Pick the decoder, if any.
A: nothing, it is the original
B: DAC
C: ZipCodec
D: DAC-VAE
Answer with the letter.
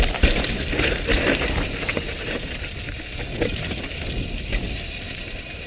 A